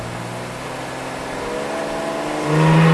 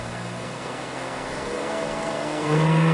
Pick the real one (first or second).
first